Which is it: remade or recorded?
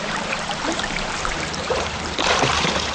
remade